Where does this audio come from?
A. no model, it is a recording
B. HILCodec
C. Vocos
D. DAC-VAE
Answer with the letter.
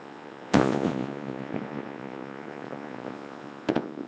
C